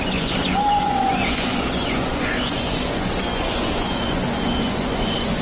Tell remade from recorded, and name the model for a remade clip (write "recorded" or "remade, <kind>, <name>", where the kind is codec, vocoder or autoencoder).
remade, vocoder, Vocos